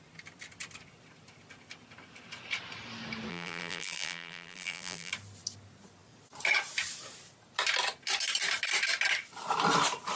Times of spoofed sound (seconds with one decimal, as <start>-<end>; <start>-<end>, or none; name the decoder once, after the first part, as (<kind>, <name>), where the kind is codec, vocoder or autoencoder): 3.3-5.1 (vocoder, BigVGAN v2)